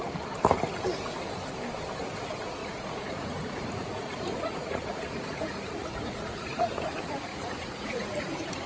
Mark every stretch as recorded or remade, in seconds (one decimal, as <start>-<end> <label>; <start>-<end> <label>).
0.0-2.6 recorded; 2.6-6.7 remade; 6.7-7.3 recorded; 7.3-8.7 remade